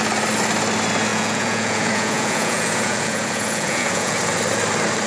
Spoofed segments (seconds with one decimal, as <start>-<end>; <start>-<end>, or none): 1.1-4.2